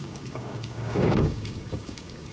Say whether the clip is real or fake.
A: fake